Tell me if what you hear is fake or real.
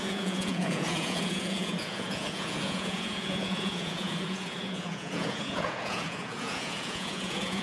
fake